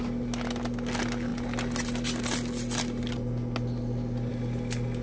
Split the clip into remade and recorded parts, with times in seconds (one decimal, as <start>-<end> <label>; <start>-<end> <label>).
0.0-5.0 recorded